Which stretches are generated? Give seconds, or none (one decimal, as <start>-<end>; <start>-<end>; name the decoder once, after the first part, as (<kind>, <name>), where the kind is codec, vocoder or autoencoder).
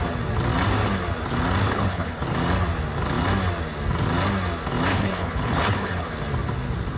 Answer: 1.6-2.2 (codec, HILCodec); 4.9-6.1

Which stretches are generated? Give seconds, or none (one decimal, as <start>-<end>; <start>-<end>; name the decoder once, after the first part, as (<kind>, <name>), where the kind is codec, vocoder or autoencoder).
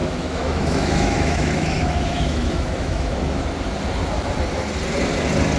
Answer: 0.0-3.4 (autoencoder, DAC-VAE)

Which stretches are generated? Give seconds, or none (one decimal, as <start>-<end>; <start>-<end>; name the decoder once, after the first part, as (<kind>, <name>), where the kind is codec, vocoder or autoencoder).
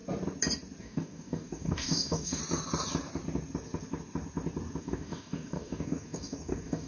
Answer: 0.8-2.4 (codec, DAC); 4.8-6.9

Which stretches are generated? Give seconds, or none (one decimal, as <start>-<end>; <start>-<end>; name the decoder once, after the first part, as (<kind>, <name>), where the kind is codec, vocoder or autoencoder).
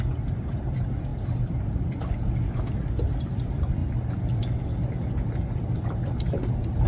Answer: none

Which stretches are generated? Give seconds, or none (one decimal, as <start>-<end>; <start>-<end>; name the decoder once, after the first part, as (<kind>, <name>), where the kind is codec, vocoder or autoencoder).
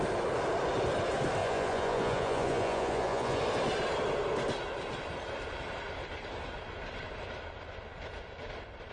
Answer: 1.4-3.4 (vocoder, Vocos)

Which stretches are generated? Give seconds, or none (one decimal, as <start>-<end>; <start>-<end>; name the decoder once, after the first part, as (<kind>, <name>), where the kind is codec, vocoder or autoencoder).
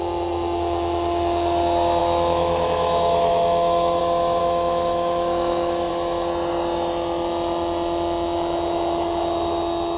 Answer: 2.0-4.0 (autoencoder, DAC-VAE); 4.4-5.9